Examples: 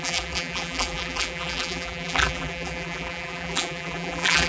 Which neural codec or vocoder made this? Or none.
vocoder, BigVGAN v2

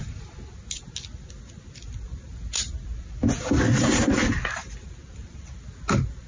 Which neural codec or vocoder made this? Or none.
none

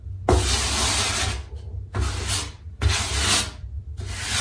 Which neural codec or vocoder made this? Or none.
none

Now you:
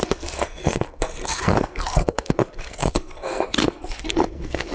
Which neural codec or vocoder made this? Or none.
codec, SNAC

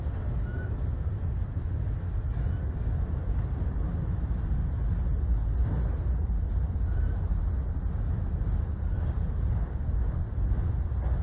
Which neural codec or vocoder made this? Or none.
none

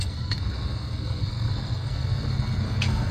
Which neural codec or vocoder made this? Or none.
codec, SNAC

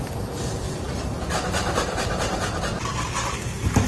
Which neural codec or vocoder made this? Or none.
none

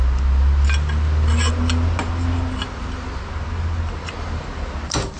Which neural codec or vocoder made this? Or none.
none